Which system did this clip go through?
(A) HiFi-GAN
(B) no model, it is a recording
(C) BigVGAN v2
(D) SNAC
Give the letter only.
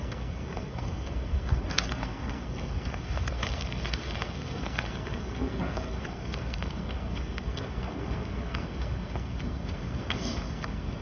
D